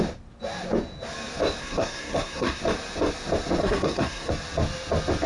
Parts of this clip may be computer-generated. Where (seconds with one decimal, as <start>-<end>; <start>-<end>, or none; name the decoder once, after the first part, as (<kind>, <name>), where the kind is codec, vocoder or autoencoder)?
1.6-2.6 (codec, SNAC); 3.6-4.3